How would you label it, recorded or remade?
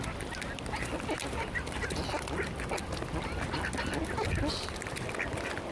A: recorded